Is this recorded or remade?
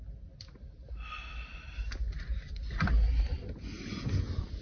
recorded